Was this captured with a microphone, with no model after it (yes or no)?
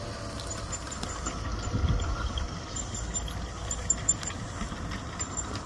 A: yes